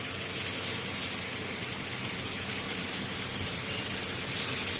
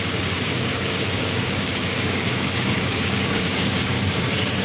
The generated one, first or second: second